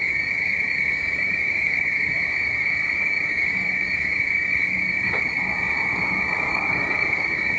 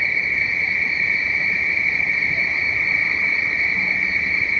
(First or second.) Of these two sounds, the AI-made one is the first